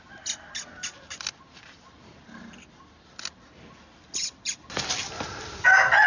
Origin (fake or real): real